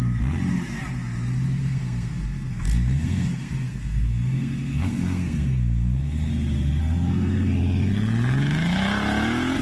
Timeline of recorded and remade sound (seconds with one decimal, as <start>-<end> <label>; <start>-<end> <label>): 0.0-1.6 recorded; 1.6-6.3 remade; 6.3-6.8 recorded; 6.8-7.5 remade; 7.5-9.6 recorded